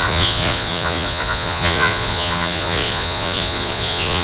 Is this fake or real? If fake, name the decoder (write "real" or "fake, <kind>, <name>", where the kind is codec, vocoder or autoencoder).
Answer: fake, vocoder, Vocos